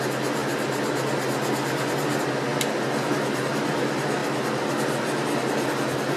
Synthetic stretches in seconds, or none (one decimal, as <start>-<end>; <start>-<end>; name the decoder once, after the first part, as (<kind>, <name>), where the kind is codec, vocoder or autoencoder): none